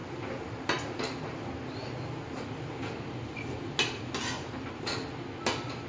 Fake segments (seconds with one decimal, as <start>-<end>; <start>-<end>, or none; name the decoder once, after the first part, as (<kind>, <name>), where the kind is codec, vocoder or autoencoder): none